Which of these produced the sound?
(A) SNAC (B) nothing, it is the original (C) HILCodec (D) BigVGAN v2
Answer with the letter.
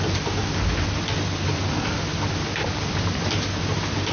B